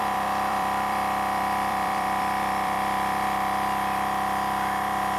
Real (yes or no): no